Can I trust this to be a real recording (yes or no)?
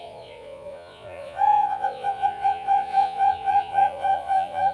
no